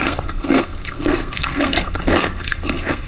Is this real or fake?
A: fake